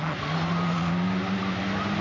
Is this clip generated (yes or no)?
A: no